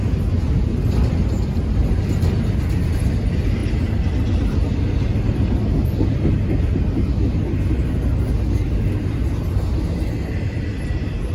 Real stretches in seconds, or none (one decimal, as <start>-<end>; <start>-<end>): 0.0-11.3